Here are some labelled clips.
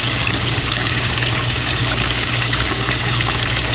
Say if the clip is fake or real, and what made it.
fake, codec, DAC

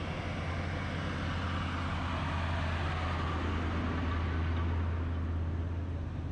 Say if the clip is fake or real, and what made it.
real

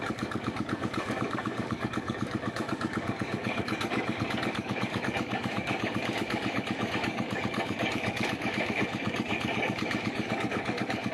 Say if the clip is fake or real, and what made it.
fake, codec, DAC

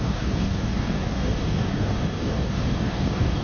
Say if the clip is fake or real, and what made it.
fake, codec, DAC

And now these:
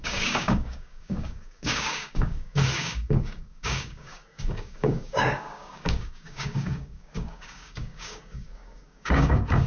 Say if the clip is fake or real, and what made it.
fake, codec, DAC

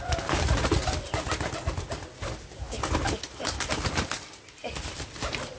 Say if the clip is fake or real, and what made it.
real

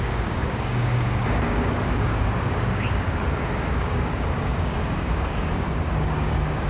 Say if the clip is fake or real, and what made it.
fake, codec, DAC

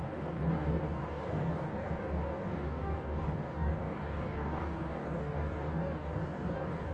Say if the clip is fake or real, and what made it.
fake, codec, DAC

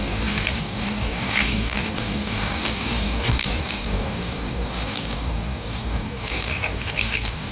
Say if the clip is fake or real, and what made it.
fake, codec, DAC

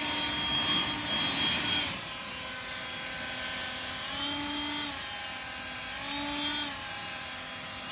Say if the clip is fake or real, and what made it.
real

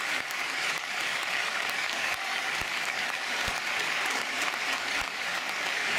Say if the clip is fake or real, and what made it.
fake, codec, DAC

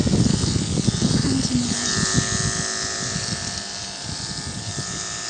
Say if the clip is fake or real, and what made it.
real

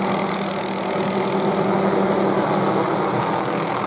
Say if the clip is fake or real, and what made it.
real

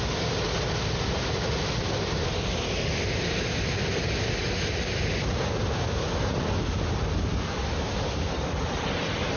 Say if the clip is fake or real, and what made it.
real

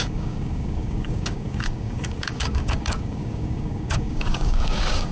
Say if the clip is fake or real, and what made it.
fake, codec, DAC